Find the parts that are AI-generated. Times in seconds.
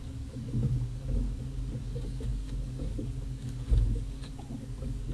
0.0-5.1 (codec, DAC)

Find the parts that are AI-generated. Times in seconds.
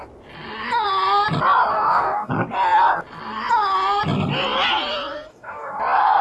1.7-2.3 (codec, DAC); 5.3-5.8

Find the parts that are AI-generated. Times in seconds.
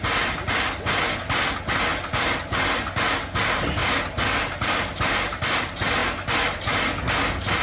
none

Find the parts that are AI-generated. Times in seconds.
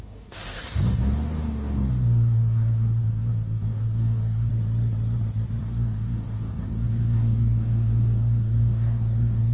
0.0-4.5 (codec, DAC); 5.6-9.5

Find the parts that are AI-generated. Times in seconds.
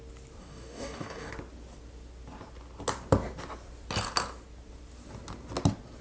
0.4-1.3 (codec, DAC)